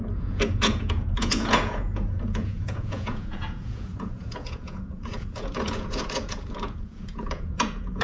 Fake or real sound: fake